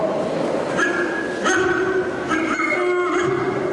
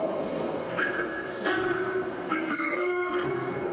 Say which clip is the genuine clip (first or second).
first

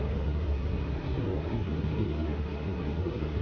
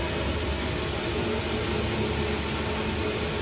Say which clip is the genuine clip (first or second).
second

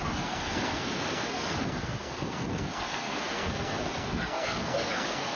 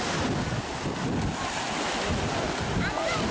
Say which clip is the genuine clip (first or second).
second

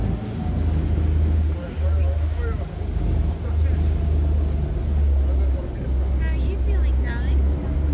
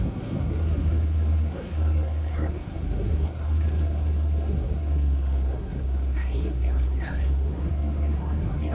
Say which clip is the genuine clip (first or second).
first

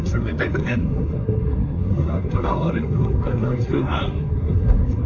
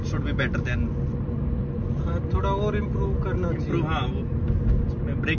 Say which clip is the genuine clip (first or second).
second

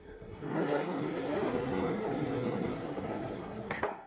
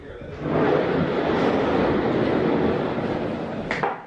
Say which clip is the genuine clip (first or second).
second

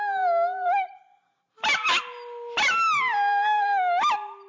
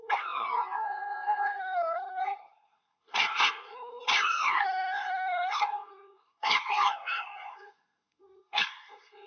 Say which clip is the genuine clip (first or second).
first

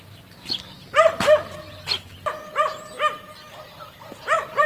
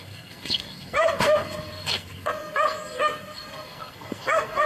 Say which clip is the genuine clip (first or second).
first